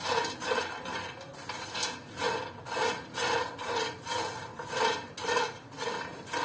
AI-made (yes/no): no